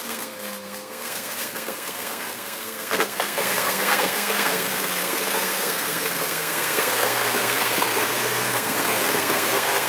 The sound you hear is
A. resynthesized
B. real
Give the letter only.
A